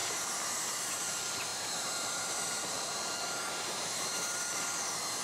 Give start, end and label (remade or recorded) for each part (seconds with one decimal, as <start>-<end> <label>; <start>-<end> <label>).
0.0-1.1 remade; 1.1-1.5 recorded; 1.5-4.6 remade; 4.6-5.2 recorded